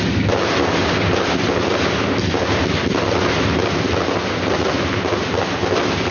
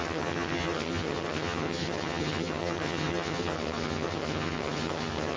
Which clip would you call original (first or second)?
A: first